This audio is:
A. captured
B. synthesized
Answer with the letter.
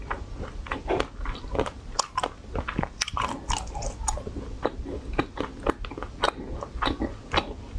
A